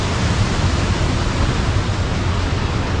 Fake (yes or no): no